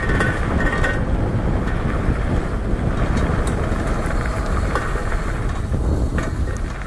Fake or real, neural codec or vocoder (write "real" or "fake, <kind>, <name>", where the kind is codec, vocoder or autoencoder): real